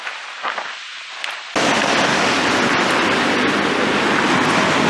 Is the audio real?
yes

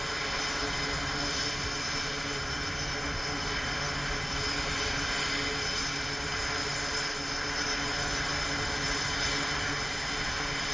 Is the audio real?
yes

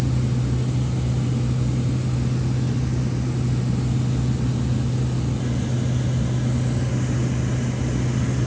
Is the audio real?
yes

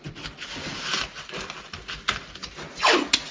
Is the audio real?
yes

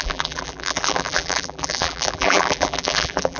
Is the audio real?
no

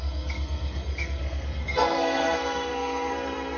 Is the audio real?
no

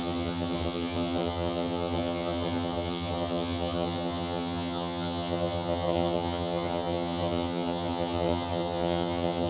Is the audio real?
no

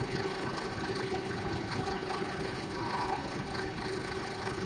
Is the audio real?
no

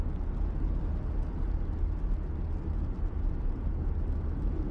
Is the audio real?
yes